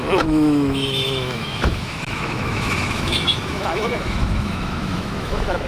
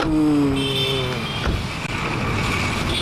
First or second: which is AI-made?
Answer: first